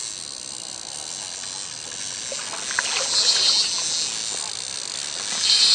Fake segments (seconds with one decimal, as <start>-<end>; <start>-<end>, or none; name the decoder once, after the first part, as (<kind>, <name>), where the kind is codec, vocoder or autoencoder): none